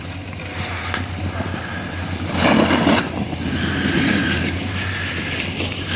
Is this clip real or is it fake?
real